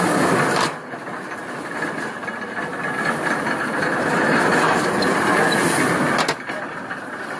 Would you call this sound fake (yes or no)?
no